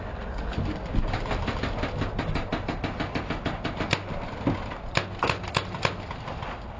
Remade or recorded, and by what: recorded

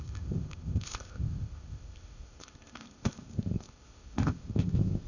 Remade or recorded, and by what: remade, codec, ZipCodec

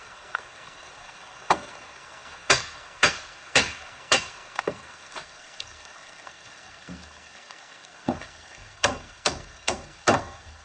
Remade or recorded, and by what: remade, codec, SNAC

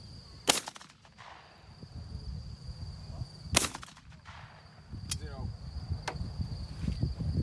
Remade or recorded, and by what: recorded